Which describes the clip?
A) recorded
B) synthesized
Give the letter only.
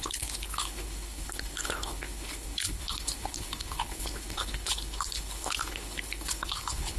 B